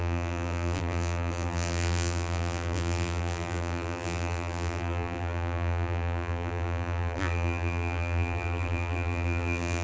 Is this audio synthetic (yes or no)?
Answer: yes